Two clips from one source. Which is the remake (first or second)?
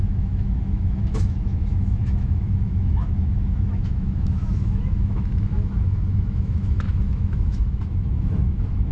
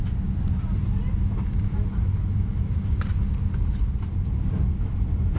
first